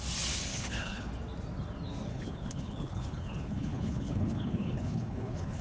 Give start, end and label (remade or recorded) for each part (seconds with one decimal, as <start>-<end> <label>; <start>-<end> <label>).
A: 0.0-0.5 recorded; 0.5-1.1 remade; 1.1-2.1 recorded; 2.1-5.6 remade